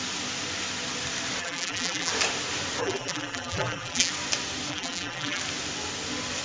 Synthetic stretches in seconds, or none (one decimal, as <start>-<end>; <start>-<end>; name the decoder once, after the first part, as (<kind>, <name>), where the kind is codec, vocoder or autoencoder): 1.4-2.1 (vocoder, BigVGAN v2); 2.8-4.1; 4.7-5.4